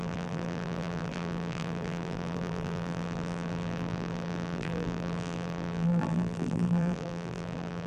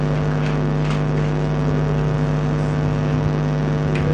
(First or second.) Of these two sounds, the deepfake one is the first